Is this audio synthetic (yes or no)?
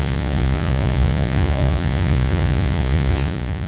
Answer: yes